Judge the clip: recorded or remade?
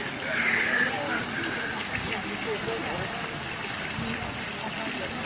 recorded